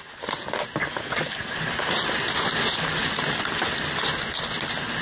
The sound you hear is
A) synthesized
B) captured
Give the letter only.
B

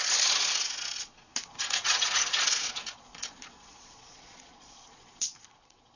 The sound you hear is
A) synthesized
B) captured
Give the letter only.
A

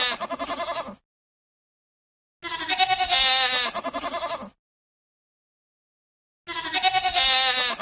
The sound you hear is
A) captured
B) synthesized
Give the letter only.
A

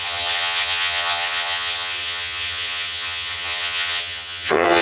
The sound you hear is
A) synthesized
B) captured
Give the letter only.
A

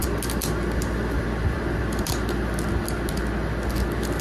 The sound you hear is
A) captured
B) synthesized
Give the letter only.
A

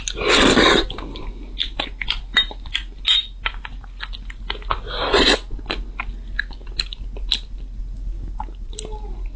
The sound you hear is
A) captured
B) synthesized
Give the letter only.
A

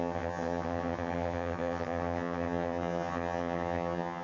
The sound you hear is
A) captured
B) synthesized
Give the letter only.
B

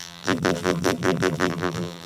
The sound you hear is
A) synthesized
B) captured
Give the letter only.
A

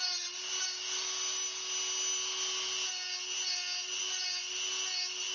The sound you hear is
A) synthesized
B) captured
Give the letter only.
B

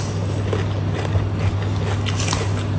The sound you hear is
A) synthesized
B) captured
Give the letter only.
B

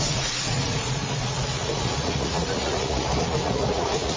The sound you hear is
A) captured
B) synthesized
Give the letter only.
B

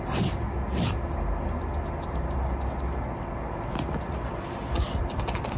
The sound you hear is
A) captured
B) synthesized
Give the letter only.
A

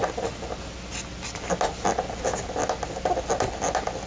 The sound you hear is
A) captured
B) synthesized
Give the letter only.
A